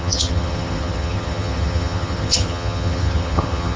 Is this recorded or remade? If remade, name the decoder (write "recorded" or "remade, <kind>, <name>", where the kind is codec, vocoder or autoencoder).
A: remade, vocoder, HiFi-GAN